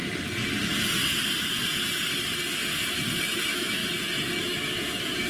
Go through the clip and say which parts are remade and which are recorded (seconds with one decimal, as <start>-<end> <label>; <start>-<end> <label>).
0.0-3.2 recorded; 3.2-3.8 remade; 3.8-4.4 recorded; 4.4-5.3 remade